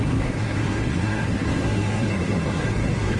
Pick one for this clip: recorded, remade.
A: remade